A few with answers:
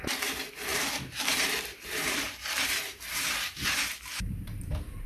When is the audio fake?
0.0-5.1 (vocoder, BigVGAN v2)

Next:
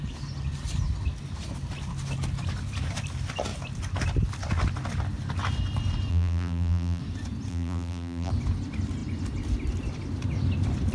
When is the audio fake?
6.1-7.0 (vocoder, BigVGAN v2); 7.5-8.3

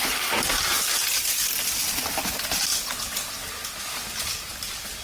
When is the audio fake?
none

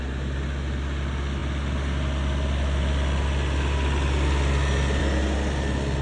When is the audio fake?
none

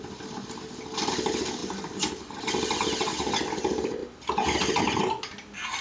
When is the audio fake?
4.0-4.8 (vocoder, BigVGAN v2)

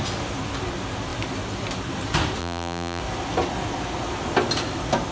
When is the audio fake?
2.4-3.0 (vocoder, BigVGAN v2)

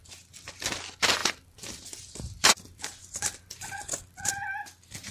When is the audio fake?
1.2-4.3 (vocoder, BigVGAN v2)

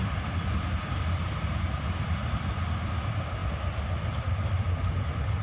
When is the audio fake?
none